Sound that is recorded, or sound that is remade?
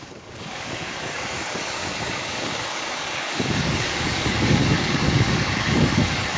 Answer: remade